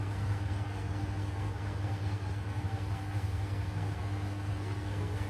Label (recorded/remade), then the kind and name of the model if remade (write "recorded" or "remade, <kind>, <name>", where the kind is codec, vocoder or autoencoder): remade, codec, SNAC